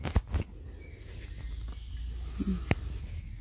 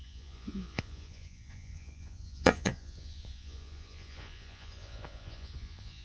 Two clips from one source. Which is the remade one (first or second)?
second